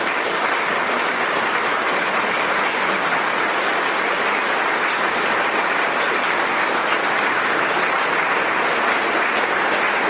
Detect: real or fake real